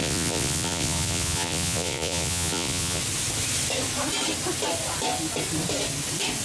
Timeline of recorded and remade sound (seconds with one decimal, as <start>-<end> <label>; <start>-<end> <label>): 0.0-3.0 remade; 3.0-6.4 recorded

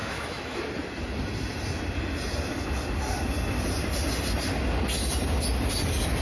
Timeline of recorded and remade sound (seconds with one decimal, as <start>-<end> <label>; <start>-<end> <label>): 0.0-0.6 remade; 0.6-6.2 recorded